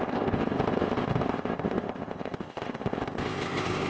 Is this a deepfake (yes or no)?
yes